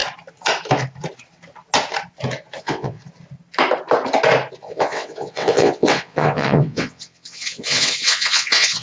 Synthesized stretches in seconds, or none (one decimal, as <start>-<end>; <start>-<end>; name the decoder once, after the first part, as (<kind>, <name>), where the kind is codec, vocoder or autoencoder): 2.6-3.0 (vocoder, WaveNeXt); 4.6-8.8